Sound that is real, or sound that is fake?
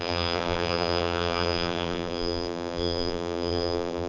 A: fake